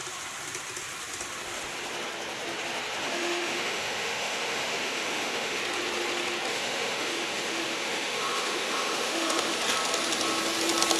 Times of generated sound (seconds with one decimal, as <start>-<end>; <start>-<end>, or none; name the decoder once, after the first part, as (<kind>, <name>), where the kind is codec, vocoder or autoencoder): 3.0-5.6 (autoencoder, DAC-VAE); 6.5-9.5